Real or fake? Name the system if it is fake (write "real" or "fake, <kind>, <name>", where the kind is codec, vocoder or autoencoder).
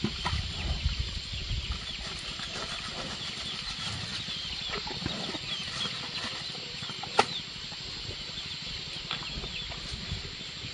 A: real